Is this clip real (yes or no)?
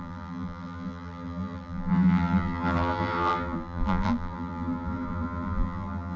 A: no